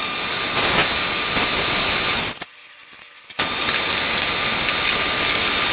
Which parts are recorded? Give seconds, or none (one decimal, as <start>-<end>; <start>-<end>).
0.0-5.7